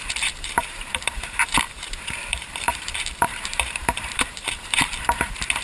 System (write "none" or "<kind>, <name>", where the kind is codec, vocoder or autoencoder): vocoder, BigVGAN v2